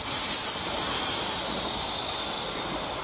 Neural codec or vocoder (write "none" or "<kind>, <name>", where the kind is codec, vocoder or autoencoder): none